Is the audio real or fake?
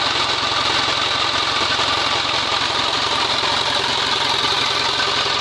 real